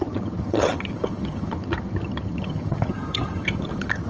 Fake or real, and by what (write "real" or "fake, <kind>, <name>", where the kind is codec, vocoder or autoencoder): fake, vocoder, HiFi-GAN